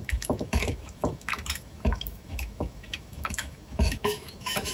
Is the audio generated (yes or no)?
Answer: yes